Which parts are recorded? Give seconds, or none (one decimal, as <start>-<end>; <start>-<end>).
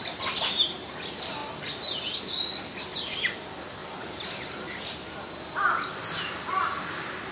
0.0-7.3